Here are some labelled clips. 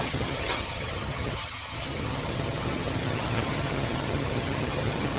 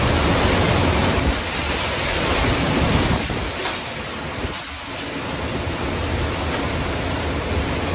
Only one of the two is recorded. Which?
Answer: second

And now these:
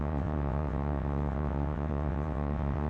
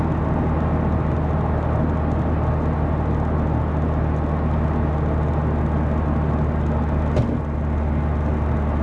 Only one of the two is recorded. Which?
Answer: second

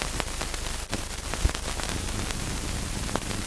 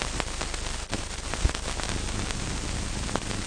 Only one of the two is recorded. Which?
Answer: second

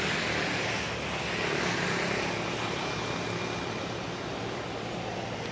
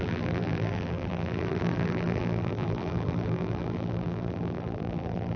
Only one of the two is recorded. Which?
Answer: first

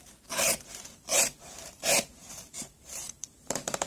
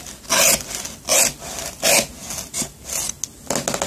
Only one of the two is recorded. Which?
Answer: second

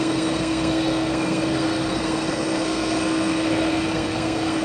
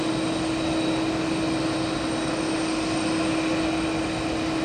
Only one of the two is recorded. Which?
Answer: second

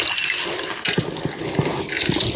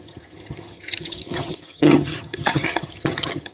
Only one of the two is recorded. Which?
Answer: first